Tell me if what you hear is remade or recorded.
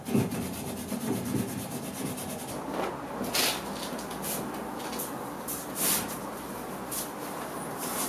recorded